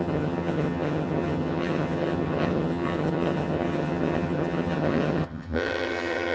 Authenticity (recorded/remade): remade